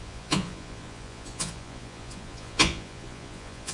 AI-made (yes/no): yes